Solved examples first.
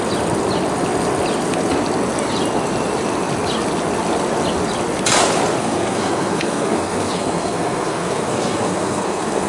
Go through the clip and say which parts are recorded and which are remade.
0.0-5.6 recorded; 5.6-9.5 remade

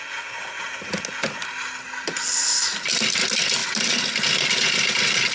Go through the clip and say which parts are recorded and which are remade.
0.0-5.3 recorded